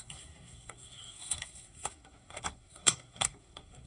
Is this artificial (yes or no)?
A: yes